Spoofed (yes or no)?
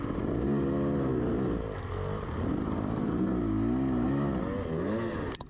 no